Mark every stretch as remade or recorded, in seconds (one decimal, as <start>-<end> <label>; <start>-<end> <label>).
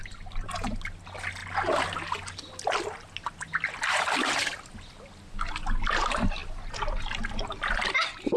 0.0-8.4 recorded